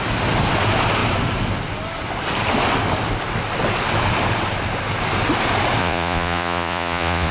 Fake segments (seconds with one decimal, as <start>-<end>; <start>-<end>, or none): 5.8-7.3